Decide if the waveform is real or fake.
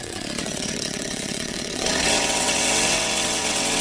fake